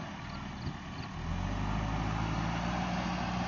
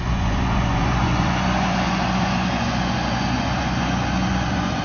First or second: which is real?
first